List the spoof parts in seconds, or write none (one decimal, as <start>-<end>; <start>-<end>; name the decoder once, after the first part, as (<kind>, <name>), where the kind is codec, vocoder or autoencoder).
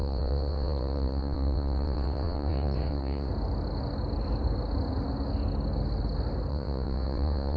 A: 0.0-3.3 (vocoder, WaveNeXt); 6.5-7.6